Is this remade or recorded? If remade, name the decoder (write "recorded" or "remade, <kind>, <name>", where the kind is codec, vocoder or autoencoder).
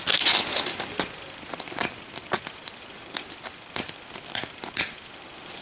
recorded